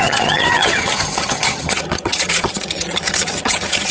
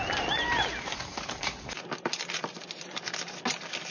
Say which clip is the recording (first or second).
second